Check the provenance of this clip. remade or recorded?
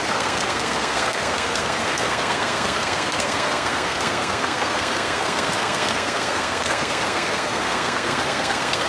remade